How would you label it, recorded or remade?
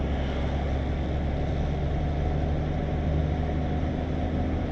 recorded